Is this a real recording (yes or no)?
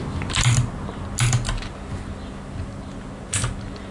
yes